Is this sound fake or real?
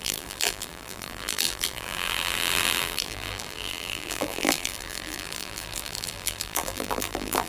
fake